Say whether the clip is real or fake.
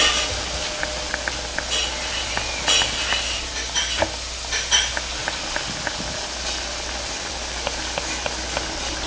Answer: real